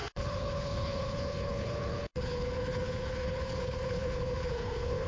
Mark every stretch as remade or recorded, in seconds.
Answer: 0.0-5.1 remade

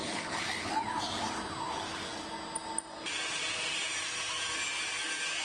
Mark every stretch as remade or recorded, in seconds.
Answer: 0.0-0.7 remade; 0.7-5.4 recorded

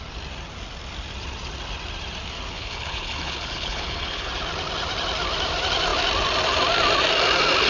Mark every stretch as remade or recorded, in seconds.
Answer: 0.0-2.5 recorded; 2.5-4.3 remade; 4.3-7.7 recorded

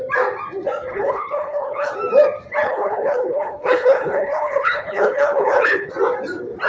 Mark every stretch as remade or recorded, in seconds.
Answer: 0.0-0.9 recorded; 0.9-1.9 remade; 1.9-2.6 recorded; 2.6-5.9 remade; 5.9-6.7 recorded